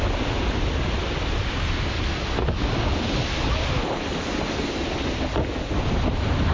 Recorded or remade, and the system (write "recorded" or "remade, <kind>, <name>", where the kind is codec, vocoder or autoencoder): recorded